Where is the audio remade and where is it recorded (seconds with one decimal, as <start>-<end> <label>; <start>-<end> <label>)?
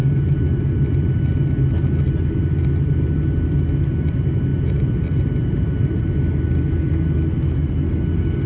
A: 0.0-0.6 remade; 0.6-4.5 recorded; 4.5-5.0 remade; 5.0-5.4 recorded; 5.4-6.0 remade; 6.0-8.5 recorded